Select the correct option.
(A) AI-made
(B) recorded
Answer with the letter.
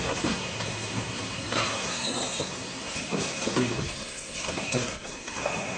A